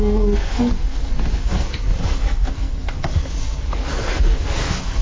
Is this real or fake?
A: fake